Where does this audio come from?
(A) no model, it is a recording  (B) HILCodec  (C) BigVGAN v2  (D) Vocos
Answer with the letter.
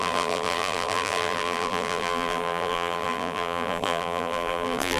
C